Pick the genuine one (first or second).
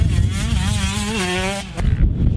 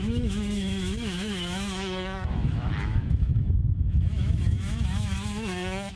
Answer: first